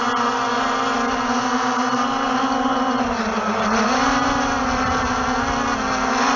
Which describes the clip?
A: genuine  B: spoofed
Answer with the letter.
A